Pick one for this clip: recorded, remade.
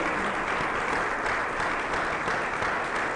recorded